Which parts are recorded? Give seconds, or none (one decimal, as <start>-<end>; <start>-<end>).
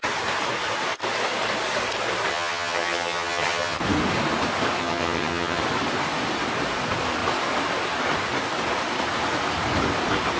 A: 0.0-2.3; 3.8-4.8; 5.6-10.4